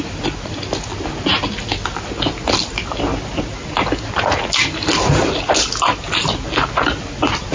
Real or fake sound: real